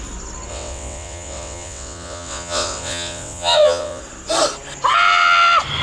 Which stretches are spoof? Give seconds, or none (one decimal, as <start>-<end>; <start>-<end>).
0.5-4.0